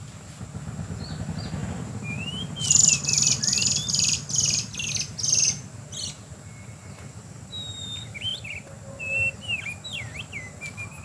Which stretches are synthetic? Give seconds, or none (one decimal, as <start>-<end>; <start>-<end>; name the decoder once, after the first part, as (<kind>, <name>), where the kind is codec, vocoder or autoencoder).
1.6-4.9 (vocoder, BigVGAN v2)